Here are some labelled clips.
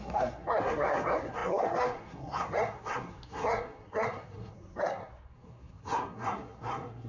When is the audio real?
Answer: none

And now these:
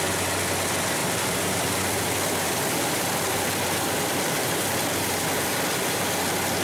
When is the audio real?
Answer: 0.0-1.0; 5.0-6.6

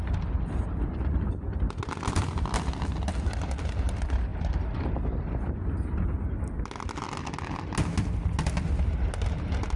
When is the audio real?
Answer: 0.0-9.8

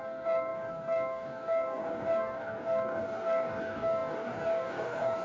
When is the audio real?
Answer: none

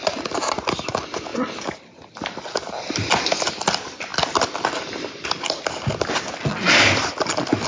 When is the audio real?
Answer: 0.0-7.7

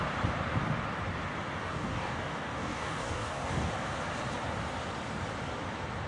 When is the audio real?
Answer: 0.0-1.7; 3.7-6.1